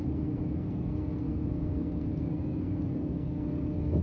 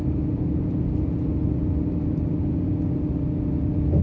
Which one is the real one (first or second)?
second